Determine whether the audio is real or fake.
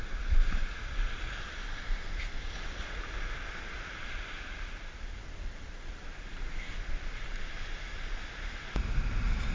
real